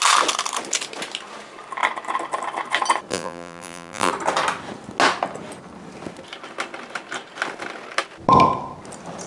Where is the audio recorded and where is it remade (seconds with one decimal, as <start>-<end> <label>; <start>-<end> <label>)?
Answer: 0.0-3.1 recorded; 3.1-4.1 remade; 4.1-9.3 recorded